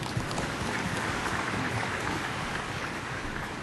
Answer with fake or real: fake